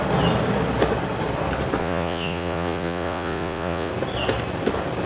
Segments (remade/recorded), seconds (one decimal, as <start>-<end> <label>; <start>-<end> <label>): 0.0-1.8 recorded; 1.8-3.9 remade; 3.9-5.1 recorded